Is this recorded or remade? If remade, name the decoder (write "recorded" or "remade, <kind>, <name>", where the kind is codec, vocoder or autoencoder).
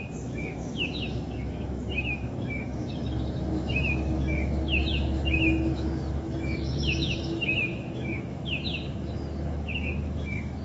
remade, autoencoder, DAC-VAE